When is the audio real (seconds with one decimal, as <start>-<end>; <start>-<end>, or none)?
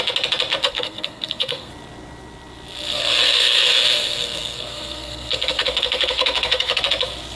0.0-0.6; 1.7-2.9; 6.8-7.4